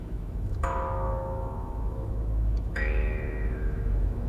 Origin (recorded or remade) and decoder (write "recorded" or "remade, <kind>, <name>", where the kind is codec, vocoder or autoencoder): remade, autoencoder, DAC-VAE